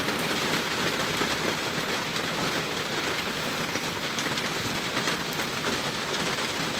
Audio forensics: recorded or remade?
remade